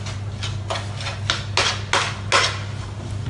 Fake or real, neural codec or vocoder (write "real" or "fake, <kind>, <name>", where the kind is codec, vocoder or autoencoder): real